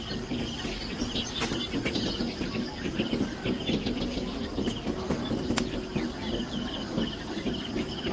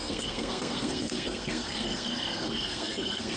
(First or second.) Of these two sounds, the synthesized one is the second